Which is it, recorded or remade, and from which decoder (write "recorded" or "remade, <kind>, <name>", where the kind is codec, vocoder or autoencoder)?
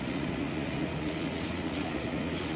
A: remade, vocoder, Vocos